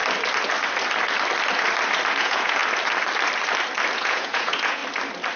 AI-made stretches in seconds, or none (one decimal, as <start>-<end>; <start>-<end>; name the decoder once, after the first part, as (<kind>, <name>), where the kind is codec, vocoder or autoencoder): 2.2-2.6 (vocoder, Vocos); 4.0-4.8